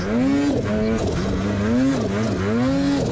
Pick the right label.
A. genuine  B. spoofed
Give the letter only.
A